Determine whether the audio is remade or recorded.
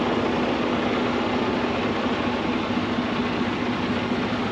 recorded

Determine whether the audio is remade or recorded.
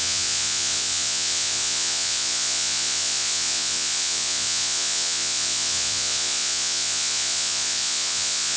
remade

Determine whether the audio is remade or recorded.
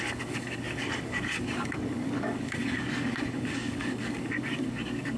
remade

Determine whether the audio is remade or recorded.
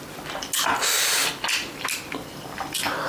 recorded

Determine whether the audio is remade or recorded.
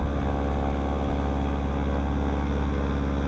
recorded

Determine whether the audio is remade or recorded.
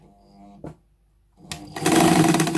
recorded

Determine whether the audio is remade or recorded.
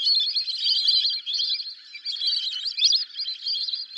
recorded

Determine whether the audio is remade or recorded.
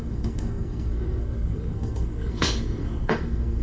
remade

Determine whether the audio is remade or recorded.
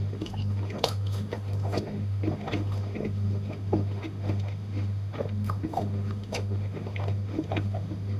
remade